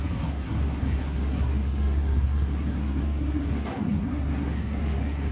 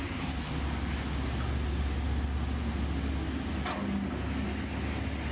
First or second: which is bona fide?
second